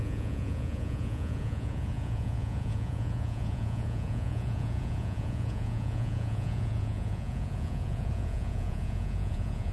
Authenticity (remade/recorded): remade